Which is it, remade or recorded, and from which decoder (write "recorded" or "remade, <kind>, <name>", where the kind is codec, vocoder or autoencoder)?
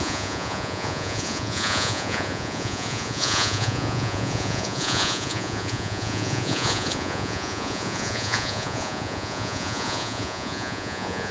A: remade, vocoder, Vocos